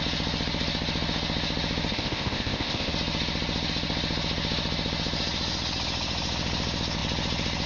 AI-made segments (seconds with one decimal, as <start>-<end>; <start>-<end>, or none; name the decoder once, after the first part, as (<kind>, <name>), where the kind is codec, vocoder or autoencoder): 1.9-2.9 (codec, ZipCodec)